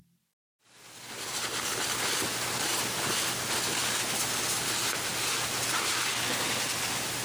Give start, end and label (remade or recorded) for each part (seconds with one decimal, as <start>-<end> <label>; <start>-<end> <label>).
0.0-7.2 recorded